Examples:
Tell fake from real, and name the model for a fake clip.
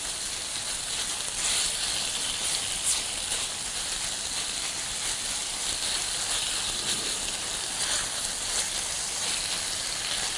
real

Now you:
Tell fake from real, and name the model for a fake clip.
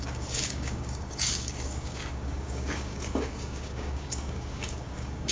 fake, codec, DAC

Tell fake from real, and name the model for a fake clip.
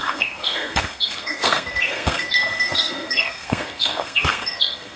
fake, codec, SNAC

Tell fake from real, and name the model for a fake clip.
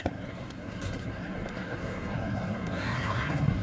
fake, codec, SNAC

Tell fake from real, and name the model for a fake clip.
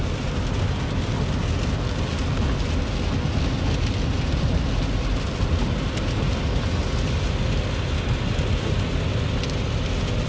real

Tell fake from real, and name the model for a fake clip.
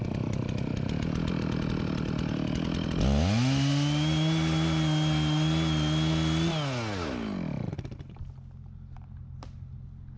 real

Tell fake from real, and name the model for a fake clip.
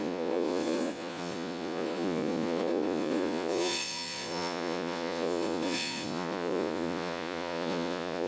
fake, vocoder, Vocos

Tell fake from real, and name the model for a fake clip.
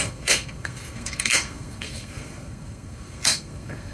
fake, codec, SNAC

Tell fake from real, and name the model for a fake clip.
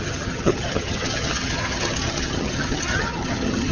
fake, vocoder, HiFi-GAN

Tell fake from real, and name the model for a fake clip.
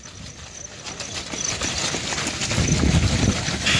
real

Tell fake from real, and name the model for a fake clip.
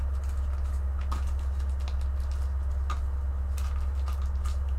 real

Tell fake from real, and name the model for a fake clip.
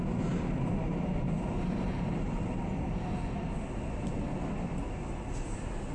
real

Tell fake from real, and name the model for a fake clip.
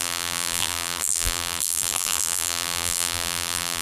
fake, vocoder, BigVGAN v2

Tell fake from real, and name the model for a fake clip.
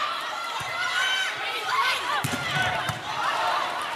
fake, vocoder, BigVGAN v2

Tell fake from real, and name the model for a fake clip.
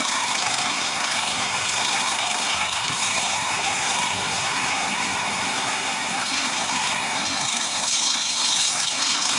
fake, codec, SNAC